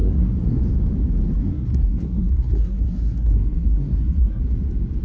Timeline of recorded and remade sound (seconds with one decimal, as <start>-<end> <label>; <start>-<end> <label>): 0.0-0.6 remade; 0.6-1.4 recorded; 1.4-4.4 remade; 4.4-5.0 recorded

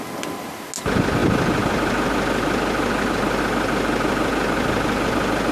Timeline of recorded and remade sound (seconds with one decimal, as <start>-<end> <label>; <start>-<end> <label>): 0.0-5.5 recorded